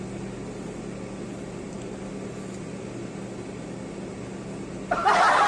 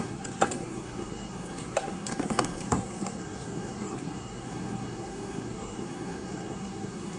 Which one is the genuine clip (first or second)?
first